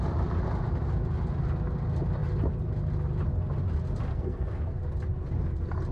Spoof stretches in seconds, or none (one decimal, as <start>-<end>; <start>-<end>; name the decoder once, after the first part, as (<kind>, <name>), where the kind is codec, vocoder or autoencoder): 4.1-4.8 (codec, SNAC)